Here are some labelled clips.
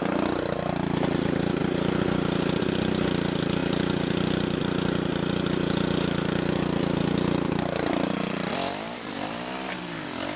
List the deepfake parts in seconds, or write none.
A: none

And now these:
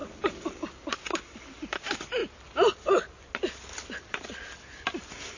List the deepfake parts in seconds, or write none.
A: none

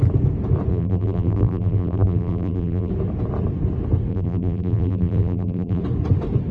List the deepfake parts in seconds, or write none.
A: 0.7-2.9 (vocoder, BigVGAN v2); 4.1-5.8

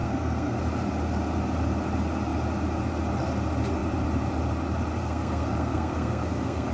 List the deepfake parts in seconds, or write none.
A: 0.0-0.6 (codec, SNAC); 5.0-6.7